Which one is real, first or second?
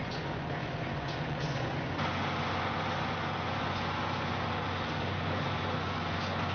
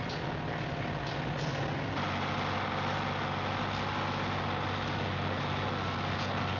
second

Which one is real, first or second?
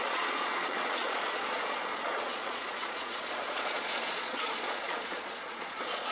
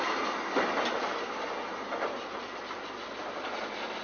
second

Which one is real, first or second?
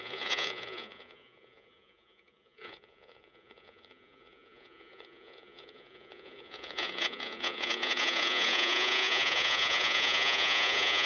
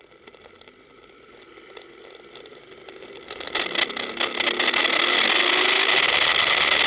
second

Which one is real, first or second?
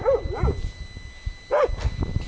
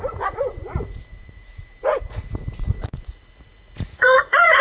first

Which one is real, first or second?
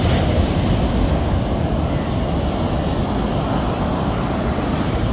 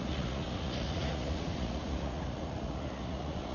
first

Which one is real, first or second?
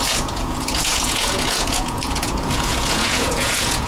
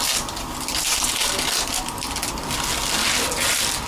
second